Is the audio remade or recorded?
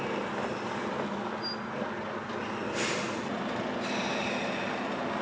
recorded